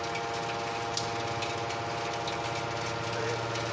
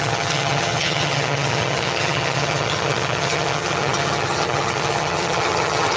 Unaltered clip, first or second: first